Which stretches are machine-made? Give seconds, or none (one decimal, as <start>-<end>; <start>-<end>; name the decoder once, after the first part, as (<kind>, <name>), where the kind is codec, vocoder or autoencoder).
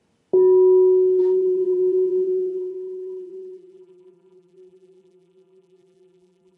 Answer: 1.2-6.6 (vocoder, BigVGAN v2)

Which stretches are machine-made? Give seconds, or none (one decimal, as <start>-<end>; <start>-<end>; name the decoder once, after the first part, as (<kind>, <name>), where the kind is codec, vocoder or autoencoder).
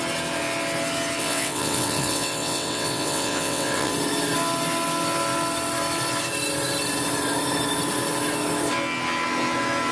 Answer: 1.2-3.9 (vocoder, WaveNeXt)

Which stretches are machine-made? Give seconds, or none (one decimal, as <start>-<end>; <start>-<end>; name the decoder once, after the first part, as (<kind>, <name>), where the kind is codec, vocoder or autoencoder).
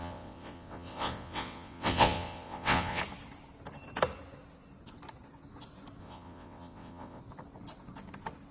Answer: 0.0-3.0 (vocoder, WaveNeXt); 6.0-7.2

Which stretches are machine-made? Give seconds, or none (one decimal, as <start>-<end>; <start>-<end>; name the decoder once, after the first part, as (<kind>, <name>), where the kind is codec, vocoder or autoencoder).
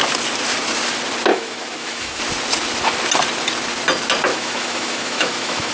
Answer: 1.3-2.2 (autoencoder, DAC-VAE); 4.3-5.7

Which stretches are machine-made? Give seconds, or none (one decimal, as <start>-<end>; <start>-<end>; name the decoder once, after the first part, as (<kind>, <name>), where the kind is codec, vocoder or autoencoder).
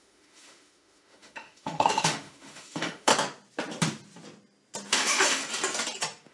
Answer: 0.0-3.1 (autoencoder, DAC-VAE); 4.9-5.4